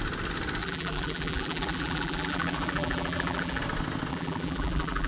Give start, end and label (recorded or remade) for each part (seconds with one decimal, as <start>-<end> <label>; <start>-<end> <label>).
0.0-0.6 recorded; 0.6-3.6 remade; 3.6-4.1 recorded; 4.1-5.1 remade